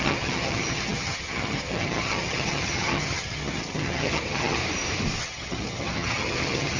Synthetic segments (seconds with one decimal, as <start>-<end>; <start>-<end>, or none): 0.0-4.6; 5.2-6.8